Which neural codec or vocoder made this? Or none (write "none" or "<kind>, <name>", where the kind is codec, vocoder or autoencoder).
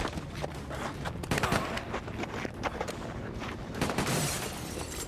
vocoder, BigVGAN v2